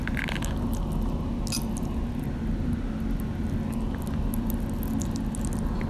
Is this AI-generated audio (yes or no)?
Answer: no